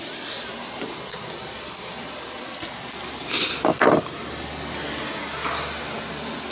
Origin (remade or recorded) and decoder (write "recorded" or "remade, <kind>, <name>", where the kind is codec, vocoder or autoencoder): recorded